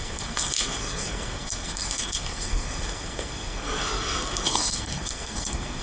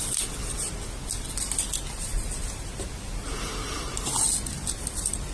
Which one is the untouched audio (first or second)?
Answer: second